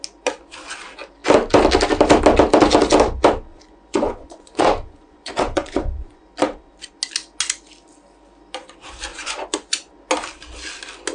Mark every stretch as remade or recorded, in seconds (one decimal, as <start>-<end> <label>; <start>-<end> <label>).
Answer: 0.0-3.5 recorded; 3.5-6.3 remade; 6.3-9.1 recorded; 9.1-9.9 remade; 9.9-11.1 recorded